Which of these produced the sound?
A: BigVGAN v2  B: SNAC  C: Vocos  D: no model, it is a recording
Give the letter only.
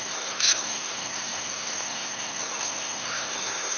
B